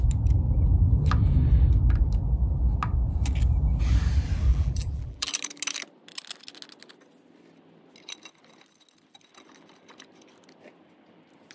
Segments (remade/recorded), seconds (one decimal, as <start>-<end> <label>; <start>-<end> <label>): 0.0-4.5 recorded; 4.5-5.3 remade; 5.3-11.5 recorded